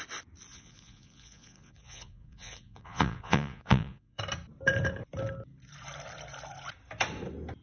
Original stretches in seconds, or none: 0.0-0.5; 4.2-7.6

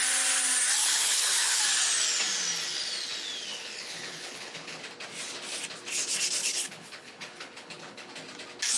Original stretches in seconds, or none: 0.0-0.8; 1.6-3.5; 4.8-6.4; 8.1-8.8

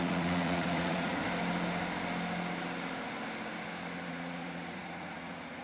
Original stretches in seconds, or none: 1.2-4.1

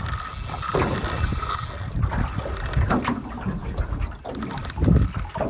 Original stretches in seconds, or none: 0.0-5.5

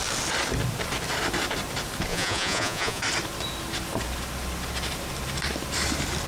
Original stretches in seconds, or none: 0.0-2.1; 3.0-6.3

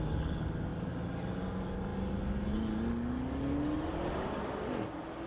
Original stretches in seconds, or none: 0.0-5.3